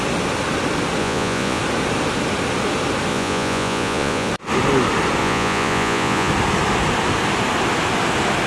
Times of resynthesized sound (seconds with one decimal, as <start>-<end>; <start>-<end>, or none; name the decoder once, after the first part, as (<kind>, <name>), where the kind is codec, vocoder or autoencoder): 1.0-1.6 (vocoder, Vocos); 3.1-4.3; 5.2-6.3